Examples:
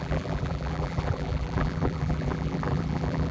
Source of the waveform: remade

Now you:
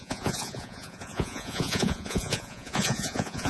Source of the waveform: remade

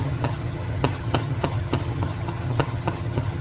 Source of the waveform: remade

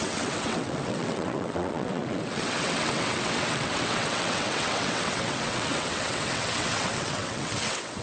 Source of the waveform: remade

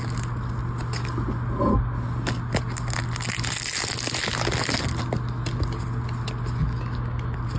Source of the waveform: recorded